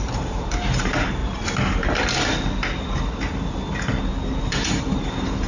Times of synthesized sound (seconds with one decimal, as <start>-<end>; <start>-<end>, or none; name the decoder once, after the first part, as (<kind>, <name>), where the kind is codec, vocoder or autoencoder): 0.0-1.2 (vocoder, BigVGAN v2); 4.4-5.5